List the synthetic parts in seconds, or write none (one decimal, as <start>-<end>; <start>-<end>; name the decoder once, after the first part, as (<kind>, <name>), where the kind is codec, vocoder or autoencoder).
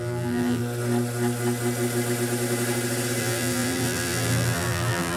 0.0-0.6 (vocoder, BigVGAN v2); 3.2-5.2